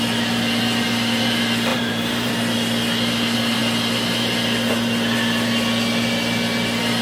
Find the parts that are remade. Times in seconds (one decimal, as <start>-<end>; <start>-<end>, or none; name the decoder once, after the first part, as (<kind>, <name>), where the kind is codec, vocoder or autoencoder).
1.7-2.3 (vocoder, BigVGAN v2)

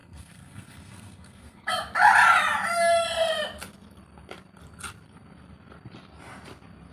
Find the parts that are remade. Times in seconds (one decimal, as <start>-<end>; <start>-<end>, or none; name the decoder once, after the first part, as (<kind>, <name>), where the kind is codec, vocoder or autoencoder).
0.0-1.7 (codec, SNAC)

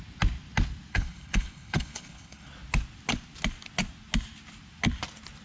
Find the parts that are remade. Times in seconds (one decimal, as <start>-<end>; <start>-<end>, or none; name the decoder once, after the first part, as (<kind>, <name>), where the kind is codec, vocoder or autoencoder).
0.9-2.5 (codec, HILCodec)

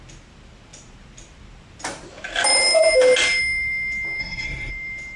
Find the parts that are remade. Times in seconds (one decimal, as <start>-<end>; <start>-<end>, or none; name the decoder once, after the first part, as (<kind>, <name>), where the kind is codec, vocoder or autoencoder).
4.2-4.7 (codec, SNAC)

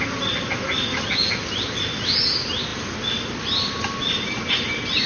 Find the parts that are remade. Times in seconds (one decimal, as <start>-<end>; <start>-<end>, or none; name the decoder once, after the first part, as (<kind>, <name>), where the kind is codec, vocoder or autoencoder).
none

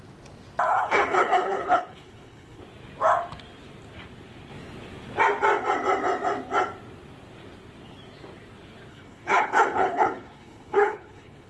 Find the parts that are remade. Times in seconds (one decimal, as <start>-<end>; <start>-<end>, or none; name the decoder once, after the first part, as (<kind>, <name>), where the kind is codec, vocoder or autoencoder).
0.7-2.6 (codec, HILCodec); 8.9-11.5

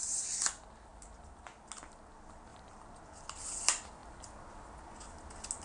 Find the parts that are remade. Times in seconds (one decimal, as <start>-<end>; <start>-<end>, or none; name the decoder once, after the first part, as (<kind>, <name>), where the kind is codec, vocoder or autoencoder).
2.5-3.0 (vocoder, BigVGAN v2)

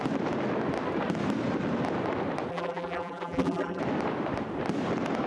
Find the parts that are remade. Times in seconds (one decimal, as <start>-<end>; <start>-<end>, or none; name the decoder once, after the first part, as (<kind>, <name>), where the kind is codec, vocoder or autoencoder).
2.5-3.8 (vocoder, BigVGAN v2)